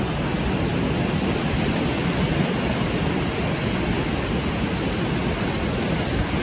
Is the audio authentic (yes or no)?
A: yes